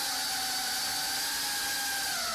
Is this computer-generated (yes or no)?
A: no